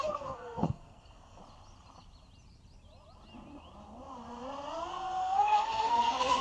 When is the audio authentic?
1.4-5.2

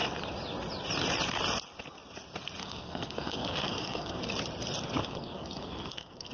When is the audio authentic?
0.0-2.6; 4.2-5.0

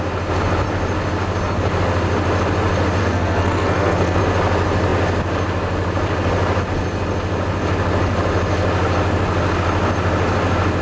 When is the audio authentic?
0.0-3.0; 4.2-10.8

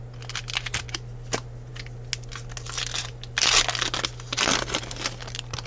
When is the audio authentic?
0.0-5.7

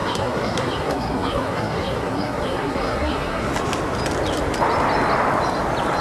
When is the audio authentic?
3.5-6.0

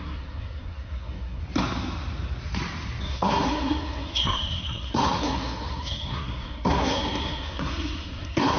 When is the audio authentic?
1.4-3.0

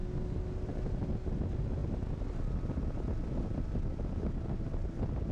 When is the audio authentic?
0.0-5.3

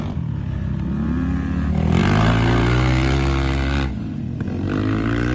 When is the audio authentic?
0.0-5.3